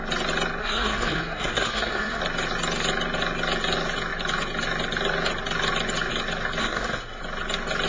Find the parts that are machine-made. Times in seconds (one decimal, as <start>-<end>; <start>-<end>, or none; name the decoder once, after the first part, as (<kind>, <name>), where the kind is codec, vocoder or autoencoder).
0.6-2.2 (codec, SNAC); 6.6-7.2